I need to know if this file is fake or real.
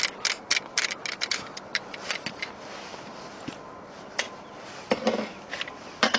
real